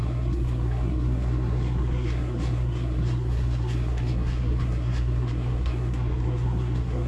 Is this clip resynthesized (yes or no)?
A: yes